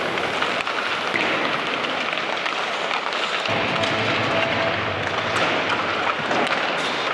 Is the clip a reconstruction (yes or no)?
no